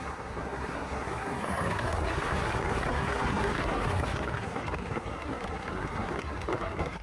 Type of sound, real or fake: fake